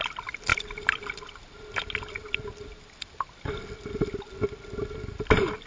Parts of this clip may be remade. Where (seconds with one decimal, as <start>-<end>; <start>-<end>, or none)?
0.5-1.1